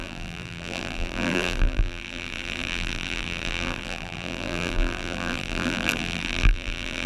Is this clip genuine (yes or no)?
no